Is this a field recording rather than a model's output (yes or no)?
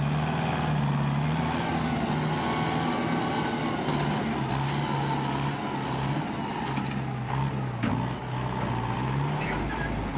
yes